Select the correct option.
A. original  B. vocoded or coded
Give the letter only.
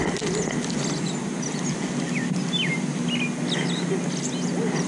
A